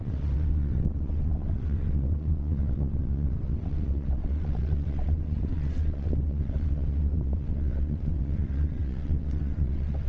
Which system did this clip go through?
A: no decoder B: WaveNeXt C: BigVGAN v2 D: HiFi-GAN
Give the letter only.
B